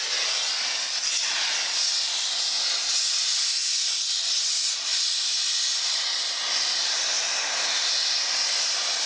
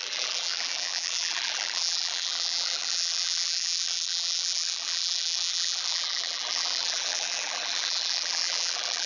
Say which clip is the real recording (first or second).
first